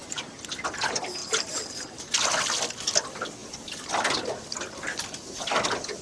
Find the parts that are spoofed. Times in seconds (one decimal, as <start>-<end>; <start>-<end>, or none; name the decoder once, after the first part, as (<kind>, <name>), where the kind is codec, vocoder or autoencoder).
0.0-0.5 (vocoder, BigVGAN v2); 1.2-2.0; 3.4-4.7